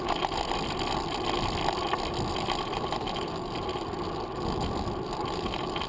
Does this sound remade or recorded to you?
recorded